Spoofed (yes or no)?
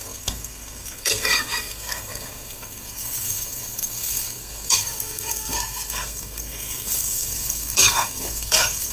yes